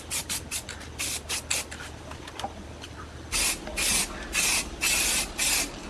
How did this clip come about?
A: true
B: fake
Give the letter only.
A